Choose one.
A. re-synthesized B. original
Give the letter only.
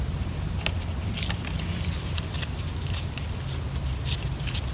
B